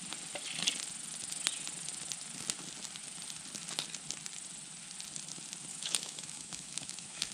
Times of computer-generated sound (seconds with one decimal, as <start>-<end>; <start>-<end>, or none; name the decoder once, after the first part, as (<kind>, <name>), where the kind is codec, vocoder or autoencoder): 5.7-7.3 (autoencoder, DAC-VAE)